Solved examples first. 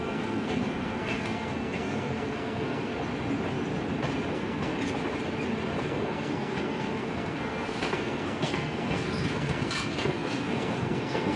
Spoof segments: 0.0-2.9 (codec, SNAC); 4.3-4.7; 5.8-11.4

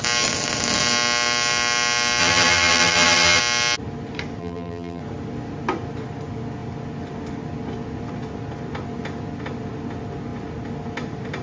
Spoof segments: 2.2-3.4 (vocoder, BigVGAN v2); 4.4-5.0

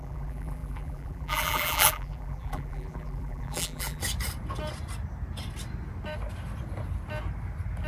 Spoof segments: 0.0-4.0 (vocoder, BigVGAN v2)

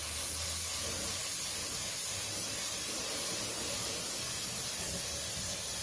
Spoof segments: none

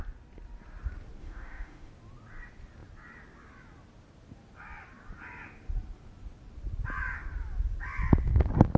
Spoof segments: 1.2-1.9 (autoencoder, DAC-VAE)